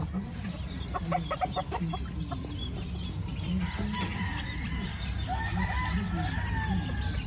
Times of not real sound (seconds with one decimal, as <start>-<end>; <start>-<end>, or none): none